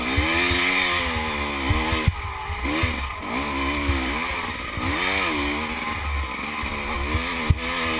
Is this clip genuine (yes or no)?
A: yes